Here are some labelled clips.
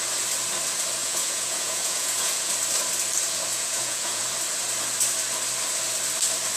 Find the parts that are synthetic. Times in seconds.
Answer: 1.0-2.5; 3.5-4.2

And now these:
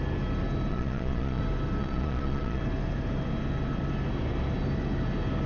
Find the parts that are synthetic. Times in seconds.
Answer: 0.7-1.4; 1.8-2.6

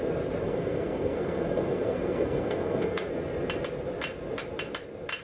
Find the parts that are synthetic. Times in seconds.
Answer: 0.4-3.1

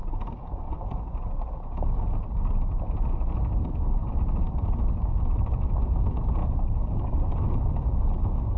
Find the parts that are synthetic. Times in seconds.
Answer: 3.6-4.1; 6.4-7.3

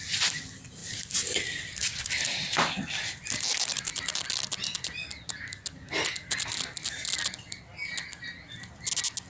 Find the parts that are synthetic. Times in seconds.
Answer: 0.8-4.3

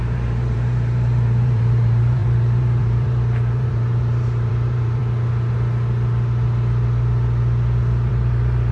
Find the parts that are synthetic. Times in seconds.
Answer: 0.0-5.0; 8.1-8.7

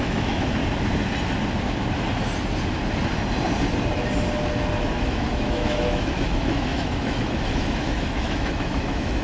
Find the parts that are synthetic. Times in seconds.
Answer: 0.0-0.6; 4.8-9.2

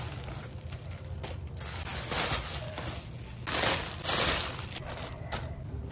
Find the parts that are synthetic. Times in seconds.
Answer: none